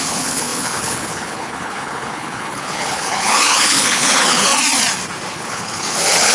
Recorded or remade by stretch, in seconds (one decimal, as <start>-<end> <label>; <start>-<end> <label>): 0.0-4.5 remade; 4.5-5.3 recorded; 5.3-6.3 remade